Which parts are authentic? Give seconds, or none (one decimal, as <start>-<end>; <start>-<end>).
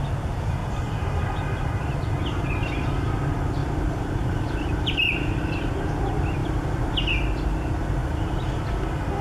0.0-0.6; 1.1-3.6; 5.7-9.2